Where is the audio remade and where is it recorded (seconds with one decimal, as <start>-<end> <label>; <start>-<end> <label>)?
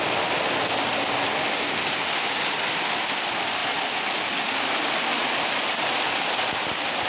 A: 0.0-7.1 recorded